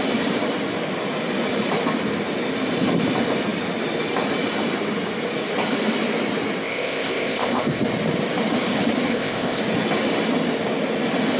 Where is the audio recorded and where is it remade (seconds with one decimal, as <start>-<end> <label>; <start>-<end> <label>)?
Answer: 0.0-6.6 recorded; 6.6-7.8 remade; 7.8-9.1 recorded; 9.1-9.6 remade; 9.6-11.4 recorded